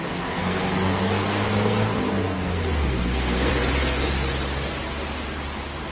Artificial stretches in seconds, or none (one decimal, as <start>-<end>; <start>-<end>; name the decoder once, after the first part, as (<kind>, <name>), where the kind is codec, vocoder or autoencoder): 0.0-3.5 (codec, SNAC)